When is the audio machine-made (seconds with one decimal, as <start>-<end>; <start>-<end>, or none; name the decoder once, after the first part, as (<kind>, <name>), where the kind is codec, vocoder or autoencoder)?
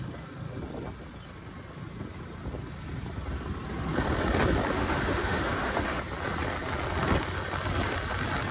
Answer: 4.8-6.0 (autoencoder, DAC-VAE)